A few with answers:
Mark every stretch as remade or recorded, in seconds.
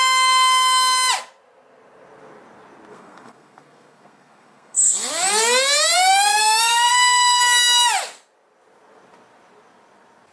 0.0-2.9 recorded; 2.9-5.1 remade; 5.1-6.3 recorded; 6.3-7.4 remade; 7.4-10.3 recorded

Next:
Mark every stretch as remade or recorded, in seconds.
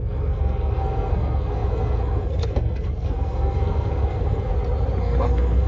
0.0-4.5 remade; 4.5-5.0 recorded; 5.0-5.7 remade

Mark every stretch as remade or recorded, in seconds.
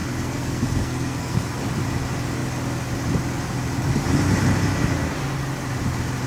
0.0-1.6 remade; 1.6-6.3 recorded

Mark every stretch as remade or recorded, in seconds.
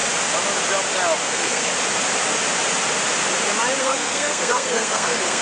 0.0-1.2 recorded; 1.2-1.7 remade; 1.7-3.8 recorded; 3.8-5.4 remade